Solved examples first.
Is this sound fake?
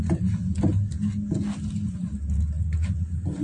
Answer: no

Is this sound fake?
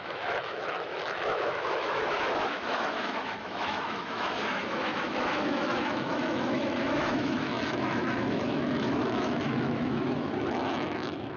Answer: yes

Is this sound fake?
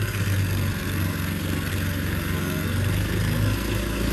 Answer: yes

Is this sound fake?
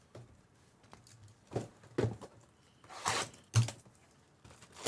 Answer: no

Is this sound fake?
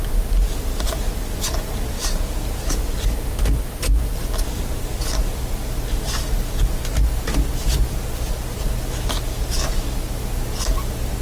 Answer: no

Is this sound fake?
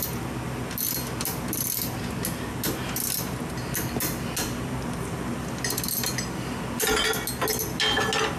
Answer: no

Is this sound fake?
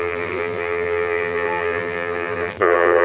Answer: yes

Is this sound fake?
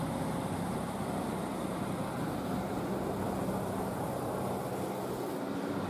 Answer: no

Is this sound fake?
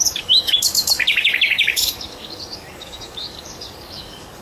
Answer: yes